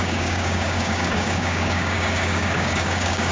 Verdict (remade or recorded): remade